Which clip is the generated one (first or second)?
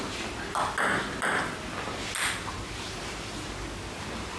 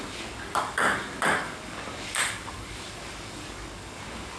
second